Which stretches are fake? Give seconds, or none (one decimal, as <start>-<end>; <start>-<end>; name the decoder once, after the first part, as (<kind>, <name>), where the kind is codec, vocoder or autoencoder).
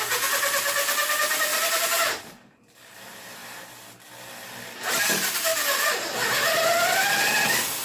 1.5-4.5 (vocoder, BigVGAN v2); 5.5-6.1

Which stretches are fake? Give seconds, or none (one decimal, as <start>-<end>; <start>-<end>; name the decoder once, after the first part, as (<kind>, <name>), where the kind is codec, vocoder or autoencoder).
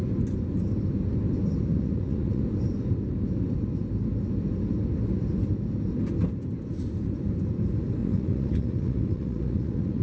1.7-2.4 (vocoder, Vocos); 8.0-10.0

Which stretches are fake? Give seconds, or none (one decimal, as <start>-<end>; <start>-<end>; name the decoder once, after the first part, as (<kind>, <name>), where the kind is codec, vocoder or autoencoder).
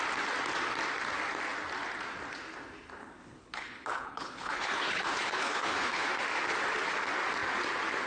3.0-6.1 (codec, HILCodec)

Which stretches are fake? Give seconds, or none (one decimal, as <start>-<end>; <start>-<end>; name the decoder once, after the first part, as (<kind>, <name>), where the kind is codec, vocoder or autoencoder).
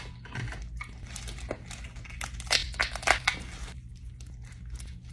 none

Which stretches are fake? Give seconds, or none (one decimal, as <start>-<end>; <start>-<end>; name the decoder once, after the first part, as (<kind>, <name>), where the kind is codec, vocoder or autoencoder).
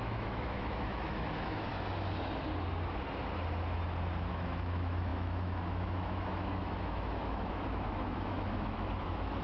0.0-1.7 (autoencoder, DAC-VAE); 4.3-9.4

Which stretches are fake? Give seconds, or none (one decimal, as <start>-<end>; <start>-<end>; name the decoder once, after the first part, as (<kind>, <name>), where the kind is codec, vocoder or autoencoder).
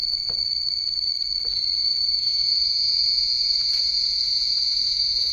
1.8-5.3 (vocoder, Vocos)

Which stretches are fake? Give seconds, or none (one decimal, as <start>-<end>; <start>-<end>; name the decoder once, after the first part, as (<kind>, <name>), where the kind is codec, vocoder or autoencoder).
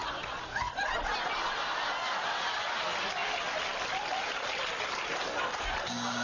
none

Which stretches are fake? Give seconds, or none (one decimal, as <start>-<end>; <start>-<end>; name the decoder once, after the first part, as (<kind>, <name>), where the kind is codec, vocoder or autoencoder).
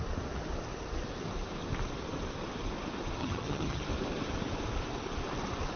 3.2-3.8 (vocoder, HiFi-GAN)